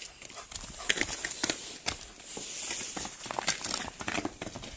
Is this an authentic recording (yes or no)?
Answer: yes